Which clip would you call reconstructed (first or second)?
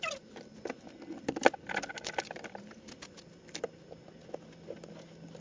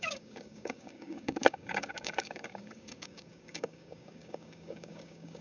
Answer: second